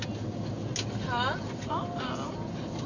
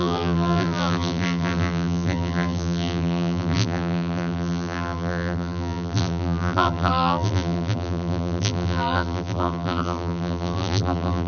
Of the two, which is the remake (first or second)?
second